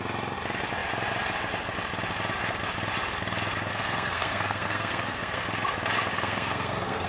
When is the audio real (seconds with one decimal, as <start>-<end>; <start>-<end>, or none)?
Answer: 0.0-3.7; 5.4-6.1

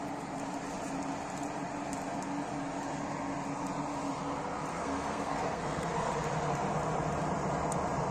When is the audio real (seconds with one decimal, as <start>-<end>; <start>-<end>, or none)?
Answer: 0.0-4.7; 6.1-8.1

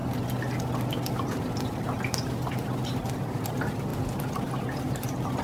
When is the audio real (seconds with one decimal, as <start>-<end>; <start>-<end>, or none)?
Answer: 0.0-5.4